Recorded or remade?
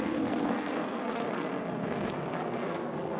remade